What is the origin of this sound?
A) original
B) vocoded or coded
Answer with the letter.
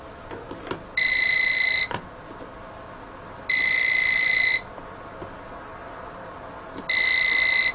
A